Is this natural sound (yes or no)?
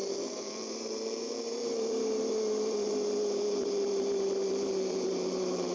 no